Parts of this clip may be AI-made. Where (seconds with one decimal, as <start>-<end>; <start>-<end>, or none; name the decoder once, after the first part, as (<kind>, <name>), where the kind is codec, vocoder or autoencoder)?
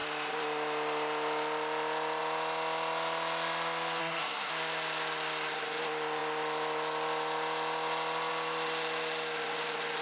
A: 4.0-4.5 (codec, SNAC)